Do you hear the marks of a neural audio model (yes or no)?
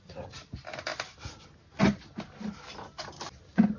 no